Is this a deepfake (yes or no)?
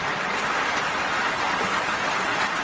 no